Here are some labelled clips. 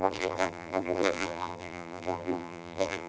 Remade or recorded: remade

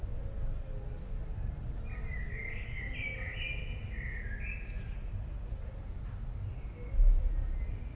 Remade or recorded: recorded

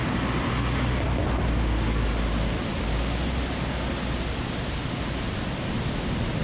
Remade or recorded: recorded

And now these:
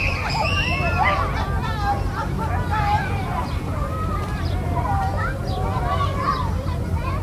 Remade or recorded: remade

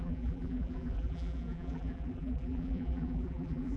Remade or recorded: remade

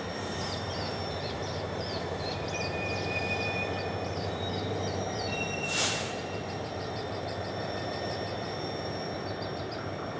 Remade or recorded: remade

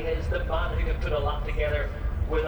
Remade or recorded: recorded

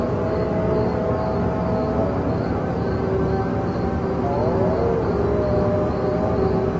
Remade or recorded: recorded